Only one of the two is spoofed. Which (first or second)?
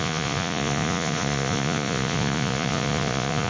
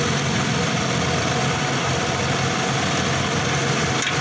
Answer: first